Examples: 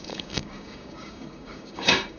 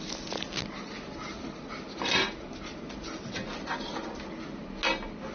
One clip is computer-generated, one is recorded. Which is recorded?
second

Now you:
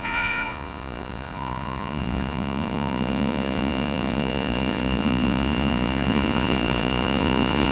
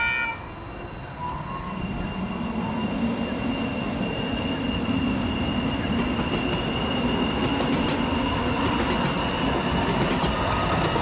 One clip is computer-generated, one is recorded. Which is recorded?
second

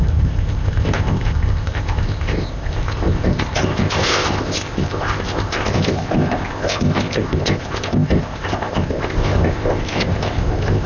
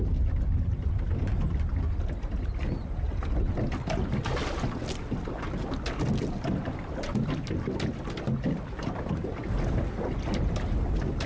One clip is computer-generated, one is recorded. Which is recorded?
second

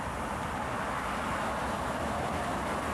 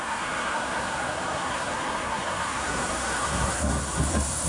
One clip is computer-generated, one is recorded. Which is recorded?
first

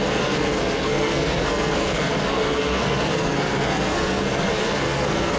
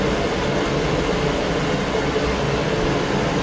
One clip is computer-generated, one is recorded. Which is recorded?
second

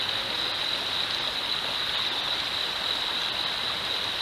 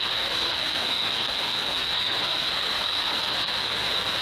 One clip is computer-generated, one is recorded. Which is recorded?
first